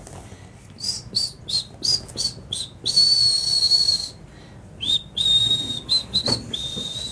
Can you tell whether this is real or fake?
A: real